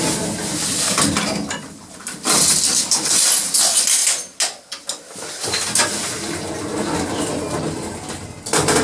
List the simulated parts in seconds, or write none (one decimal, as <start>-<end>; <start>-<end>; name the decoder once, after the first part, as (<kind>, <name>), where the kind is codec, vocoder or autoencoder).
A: none